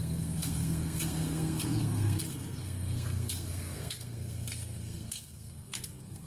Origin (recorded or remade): remade